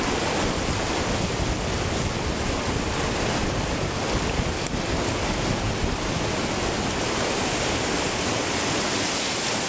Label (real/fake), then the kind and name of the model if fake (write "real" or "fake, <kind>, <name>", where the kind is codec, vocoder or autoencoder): fake, vocoder, BigVGAN v2